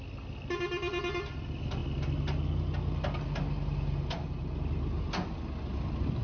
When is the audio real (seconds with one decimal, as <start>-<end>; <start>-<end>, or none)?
0.0-6.2